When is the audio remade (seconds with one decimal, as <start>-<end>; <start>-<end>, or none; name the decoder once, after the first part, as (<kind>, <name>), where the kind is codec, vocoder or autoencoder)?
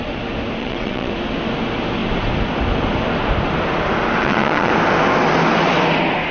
0.6-1.1 (vocoder, WaveNeXt); 4.2-4.7